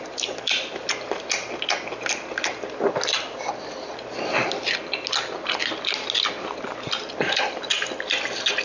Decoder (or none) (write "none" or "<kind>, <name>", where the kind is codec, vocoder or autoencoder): none